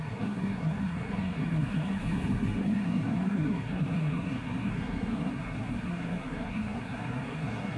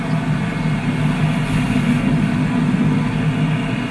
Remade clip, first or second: first